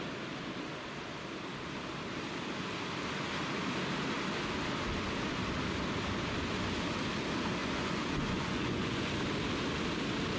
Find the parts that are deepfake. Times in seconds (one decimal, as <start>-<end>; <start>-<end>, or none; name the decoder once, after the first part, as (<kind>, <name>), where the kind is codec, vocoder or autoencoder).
7.6-9.1 (vocoder, Vocos)